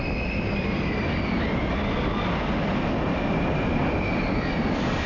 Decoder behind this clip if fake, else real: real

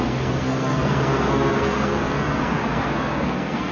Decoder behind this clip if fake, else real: fake, codec, SNAC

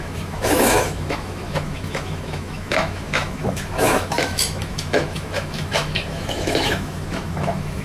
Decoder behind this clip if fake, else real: fake, autoencoder, DAC-VAE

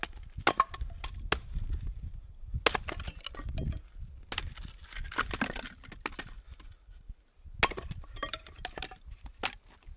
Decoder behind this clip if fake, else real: real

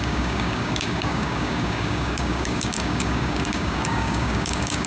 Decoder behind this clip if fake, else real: fake, codec, DAC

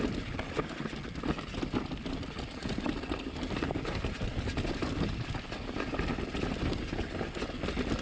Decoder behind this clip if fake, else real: real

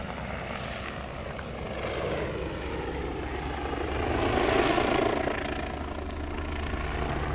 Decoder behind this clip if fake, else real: real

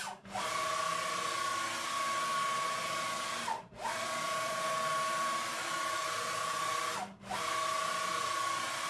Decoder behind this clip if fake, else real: real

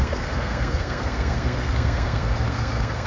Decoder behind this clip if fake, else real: fake, codec, SNAC